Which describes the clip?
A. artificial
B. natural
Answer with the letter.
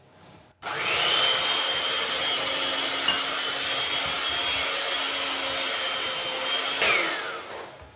B